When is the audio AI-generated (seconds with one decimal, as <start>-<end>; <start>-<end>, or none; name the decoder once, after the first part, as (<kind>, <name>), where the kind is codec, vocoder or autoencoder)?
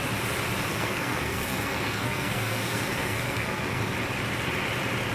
0.7-3.8 (codec, SNAC)